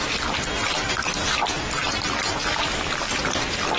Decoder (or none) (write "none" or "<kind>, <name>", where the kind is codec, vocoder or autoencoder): none